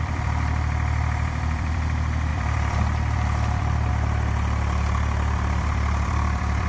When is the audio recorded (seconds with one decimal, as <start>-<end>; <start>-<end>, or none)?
none